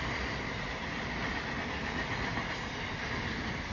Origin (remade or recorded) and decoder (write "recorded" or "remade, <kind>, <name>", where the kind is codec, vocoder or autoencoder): recorded